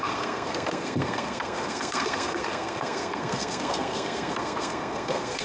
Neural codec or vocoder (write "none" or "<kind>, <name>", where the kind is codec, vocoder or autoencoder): codec, SNAC